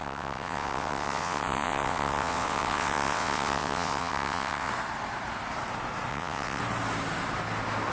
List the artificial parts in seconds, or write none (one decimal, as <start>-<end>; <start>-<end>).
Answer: 0.0-4.7; 6.1-6.6

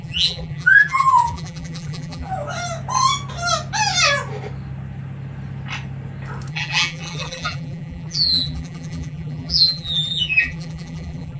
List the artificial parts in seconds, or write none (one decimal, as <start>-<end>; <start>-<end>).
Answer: 0.0-2.3; 6.5-11.4

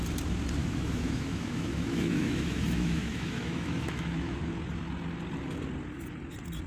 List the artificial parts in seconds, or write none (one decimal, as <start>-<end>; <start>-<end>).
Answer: 0.6-4.4

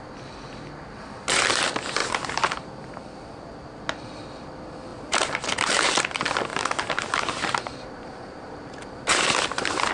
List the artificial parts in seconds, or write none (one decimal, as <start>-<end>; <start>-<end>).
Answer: 2.0-3.8; 4.9-6.0; 6.5-9.9

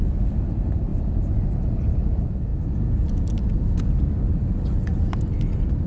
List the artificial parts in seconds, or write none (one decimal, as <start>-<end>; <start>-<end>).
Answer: none

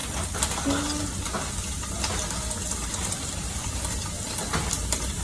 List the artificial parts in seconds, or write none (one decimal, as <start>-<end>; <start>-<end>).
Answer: 3.1-5.2

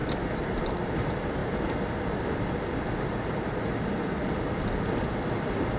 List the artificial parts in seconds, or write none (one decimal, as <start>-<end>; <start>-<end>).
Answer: none